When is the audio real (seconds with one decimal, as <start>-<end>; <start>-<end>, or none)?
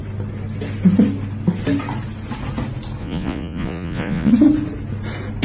0.0-3.0; 4.3-5.4